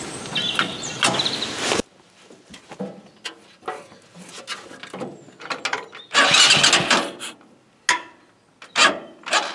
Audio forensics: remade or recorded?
recorded